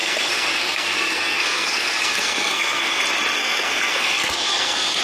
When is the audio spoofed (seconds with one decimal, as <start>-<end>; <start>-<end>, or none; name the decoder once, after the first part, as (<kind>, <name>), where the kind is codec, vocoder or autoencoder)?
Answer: 0.0-3.0 (codec, SNAC); 3.4-5.0